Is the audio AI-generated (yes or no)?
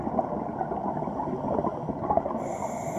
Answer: no